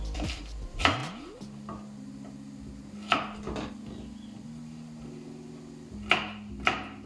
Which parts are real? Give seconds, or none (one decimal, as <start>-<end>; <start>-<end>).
1.0-4.6